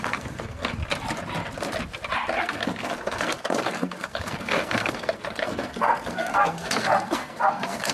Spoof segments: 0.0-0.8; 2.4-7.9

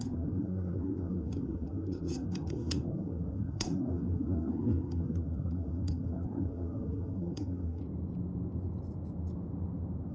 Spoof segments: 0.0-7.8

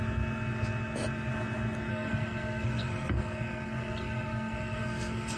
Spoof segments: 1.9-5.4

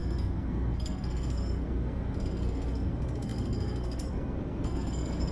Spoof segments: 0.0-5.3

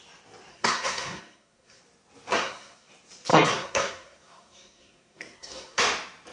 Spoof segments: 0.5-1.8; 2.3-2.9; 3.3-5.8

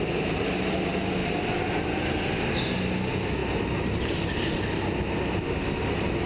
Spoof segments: none

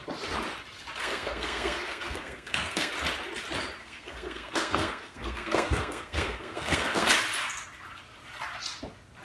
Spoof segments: 1.0-2.9; 3.8-7.1